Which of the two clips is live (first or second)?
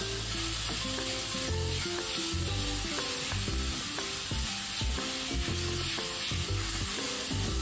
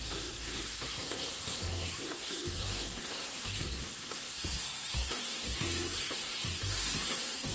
first